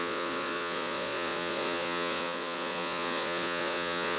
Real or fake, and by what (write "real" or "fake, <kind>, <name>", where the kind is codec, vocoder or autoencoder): fake, vocoder, Vocos